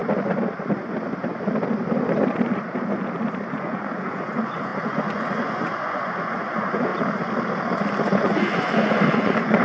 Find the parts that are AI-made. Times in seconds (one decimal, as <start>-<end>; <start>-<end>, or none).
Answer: 3.5-6.9; 8.0-9.6